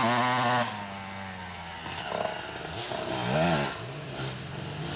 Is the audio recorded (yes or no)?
yes